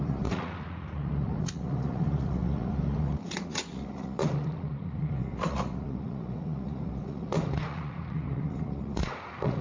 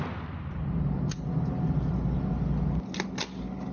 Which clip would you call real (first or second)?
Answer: second